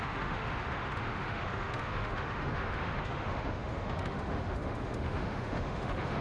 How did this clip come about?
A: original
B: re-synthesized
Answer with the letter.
B